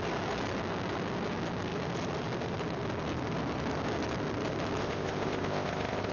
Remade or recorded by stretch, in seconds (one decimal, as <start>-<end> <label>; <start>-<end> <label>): 0.0-4.8 recorded; 4.8-6.1 remade